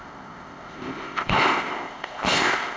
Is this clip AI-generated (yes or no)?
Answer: yes